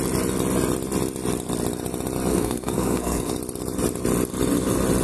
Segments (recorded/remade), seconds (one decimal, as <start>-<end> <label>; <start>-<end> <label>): 0.0-2.3 recorded; 2.3-3.3 remade; 3.3-5.0 recorded